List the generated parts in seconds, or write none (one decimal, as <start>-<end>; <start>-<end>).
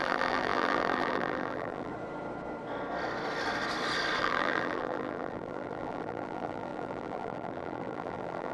0.0-1.9; 4.2-8.5